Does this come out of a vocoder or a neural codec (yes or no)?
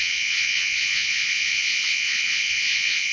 yes